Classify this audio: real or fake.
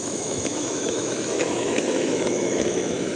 fake